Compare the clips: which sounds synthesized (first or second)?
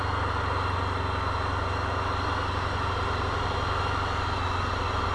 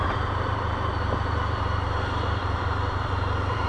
second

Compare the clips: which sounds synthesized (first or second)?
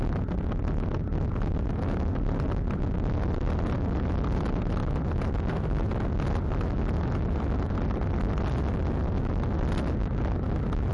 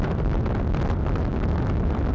second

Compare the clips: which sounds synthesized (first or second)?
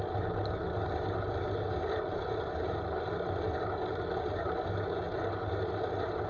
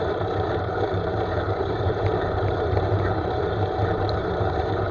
second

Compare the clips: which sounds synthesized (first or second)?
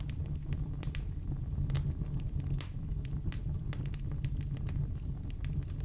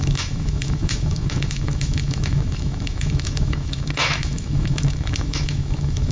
second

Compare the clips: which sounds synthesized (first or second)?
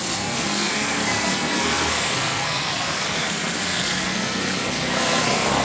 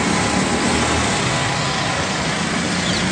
first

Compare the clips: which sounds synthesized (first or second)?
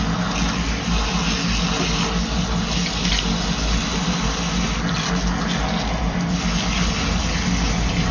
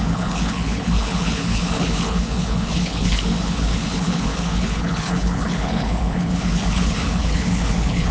second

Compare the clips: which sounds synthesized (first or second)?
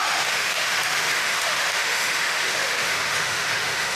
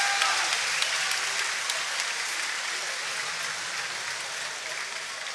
first